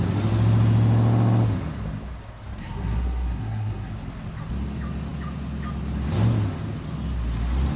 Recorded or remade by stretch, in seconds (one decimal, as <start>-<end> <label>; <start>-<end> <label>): 0.0-2.6 recorded; 2.6-3.9 remade; 3.9-7.8 recorded